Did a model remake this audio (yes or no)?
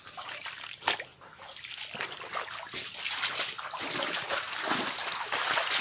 no